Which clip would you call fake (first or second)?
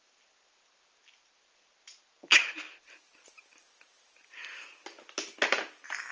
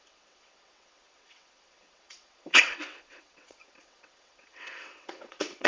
second